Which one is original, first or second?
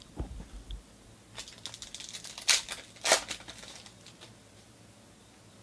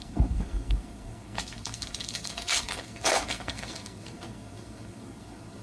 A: first